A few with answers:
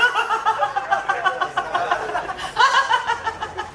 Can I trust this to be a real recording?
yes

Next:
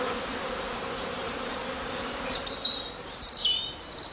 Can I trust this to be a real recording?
yes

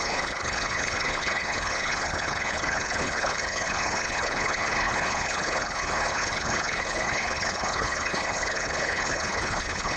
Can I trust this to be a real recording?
no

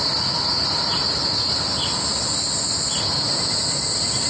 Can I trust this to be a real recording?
yes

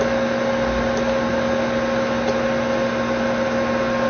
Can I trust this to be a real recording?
yes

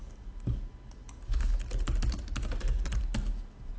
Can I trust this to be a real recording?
yes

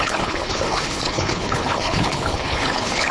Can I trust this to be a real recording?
no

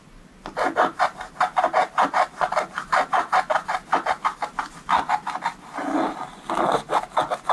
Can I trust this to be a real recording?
yes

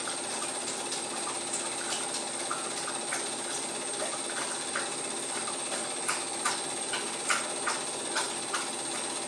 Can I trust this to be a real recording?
yes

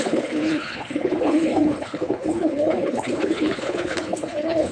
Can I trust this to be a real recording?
no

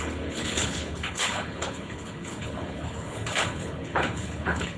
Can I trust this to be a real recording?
no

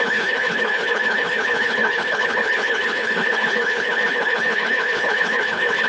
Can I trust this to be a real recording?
no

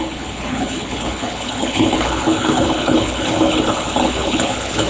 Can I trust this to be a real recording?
no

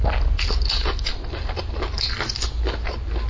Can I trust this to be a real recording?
yes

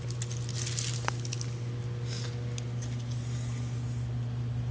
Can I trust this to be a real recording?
yes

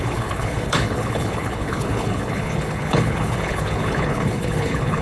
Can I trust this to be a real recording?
no